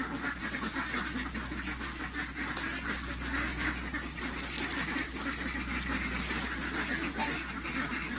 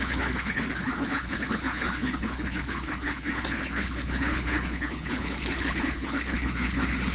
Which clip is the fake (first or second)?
second